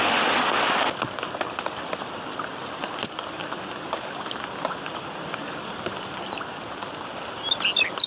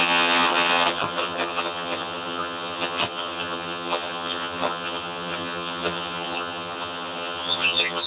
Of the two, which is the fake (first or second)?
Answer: second